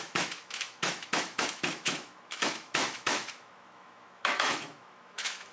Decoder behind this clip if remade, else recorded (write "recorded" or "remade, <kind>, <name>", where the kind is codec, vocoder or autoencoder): remade, autoencoder, DAC-VAE